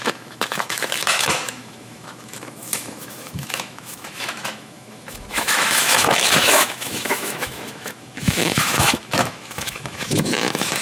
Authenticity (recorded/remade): remade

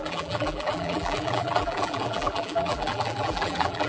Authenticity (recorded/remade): remade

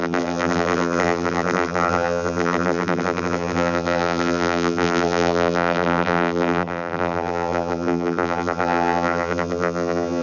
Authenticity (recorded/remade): remade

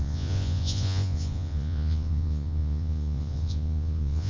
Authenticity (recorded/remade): remade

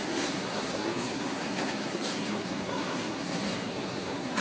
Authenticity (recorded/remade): remade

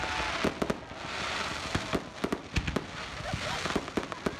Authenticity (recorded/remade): recorded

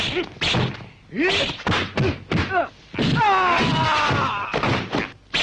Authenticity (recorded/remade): recorded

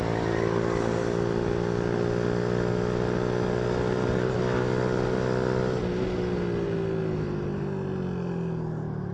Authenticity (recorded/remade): recorded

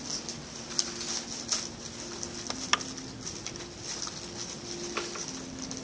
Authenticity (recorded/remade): recorded